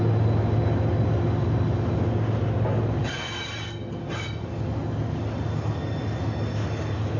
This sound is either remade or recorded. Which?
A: recorded